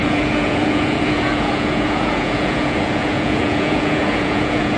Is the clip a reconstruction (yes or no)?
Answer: yes